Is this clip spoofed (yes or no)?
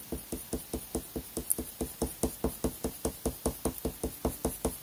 no